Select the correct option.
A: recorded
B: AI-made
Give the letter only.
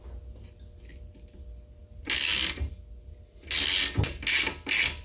A